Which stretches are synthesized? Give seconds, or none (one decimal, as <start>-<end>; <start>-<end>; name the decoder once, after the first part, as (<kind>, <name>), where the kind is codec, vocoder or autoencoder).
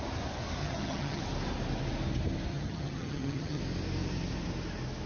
0.6-1.2 (vocoder, HiFi-GAN); 2.5-3.6